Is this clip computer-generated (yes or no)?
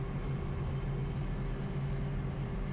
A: no